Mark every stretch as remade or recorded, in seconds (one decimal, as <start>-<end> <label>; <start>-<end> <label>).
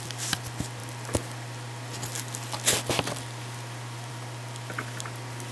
0.0-5.5 recorded